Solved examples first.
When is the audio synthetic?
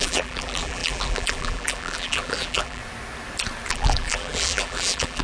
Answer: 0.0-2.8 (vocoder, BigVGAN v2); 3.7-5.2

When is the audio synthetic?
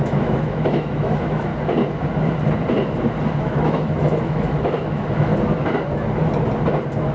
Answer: 0.0-1.5 (autoencoder, DAC-VAE); 3.4-5.3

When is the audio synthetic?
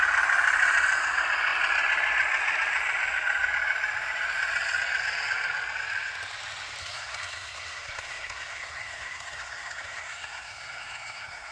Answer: 6.8-11.5 (codec, SNAC)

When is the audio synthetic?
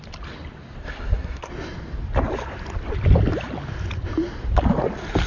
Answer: 0.8-1.5 (codec, SNAC)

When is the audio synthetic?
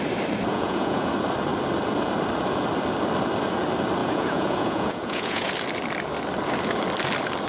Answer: 0.5-1.1 (vocoder, Vocos); 4.0-5.5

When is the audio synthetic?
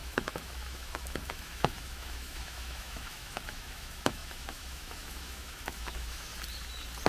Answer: 0.0-6.3 (autoencoder, DAC-VAE)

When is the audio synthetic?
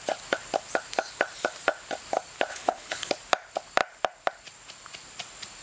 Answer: 2.5-3.1 (codec, HILCodec)